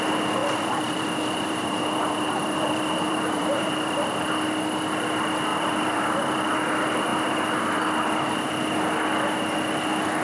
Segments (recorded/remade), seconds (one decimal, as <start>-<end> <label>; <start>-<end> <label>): 0.0-0.4 recorded; 0.4-4.2 remade; 4.2-5.5 recorded; 5.5-6.1 remade; 6.1-10.2 recorded

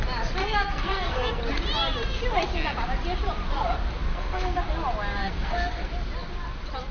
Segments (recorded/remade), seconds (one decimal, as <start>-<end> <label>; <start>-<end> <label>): 0.0-0.4 recorded; 0.4-1.4 remade; 1.4-4.1 recorded; 4.1-4.6 remade; 4.6-5.2 recorded; 5.2-5.9 remade; 5.9-6.9 recorded